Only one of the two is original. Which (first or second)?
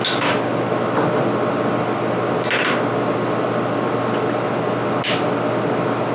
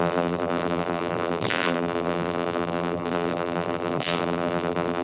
first